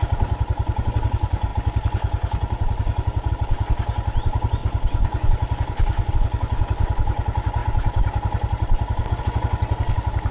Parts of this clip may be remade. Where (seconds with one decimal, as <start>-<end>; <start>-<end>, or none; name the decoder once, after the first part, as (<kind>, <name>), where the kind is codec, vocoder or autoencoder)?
none